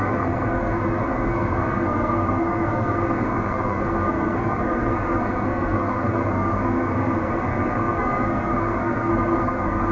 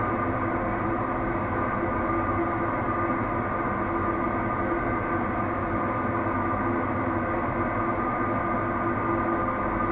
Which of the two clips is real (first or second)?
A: second